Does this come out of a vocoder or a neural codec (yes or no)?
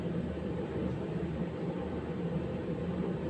yes